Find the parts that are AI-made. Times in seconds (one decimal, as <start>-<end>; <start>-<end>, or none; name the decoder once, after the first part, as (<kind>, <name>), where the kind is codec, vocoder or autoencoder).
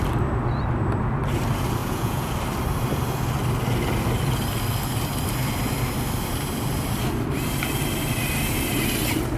1.8-2.3 (vocoder, Vocos)